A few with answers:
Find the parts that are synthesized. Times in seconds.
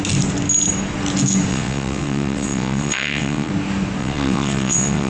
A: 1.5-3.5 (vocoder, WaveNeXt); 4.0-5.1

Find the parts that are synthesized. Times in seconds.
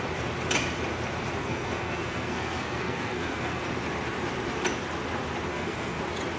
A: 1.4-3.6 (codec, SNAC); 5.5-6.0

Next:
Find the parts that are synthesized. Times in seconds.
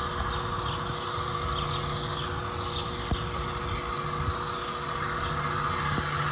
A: none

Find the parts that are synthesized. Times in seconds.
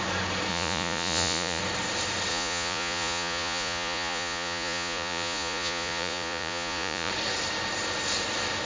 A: 0.5-1.6 (vocoder, Vocos); 2.3-7.1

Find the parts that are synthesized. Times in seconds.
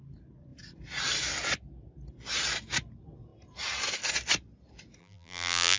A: 5.0-5.8 (vocoder, BigVGAN v2)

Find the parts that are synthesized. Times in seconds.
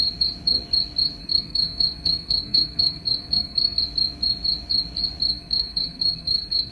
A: 1.2-3.8 (codec, SNAC); 5.3-6.7